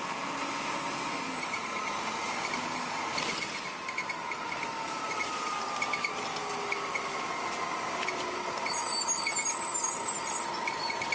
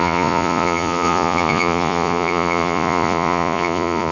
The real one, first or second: first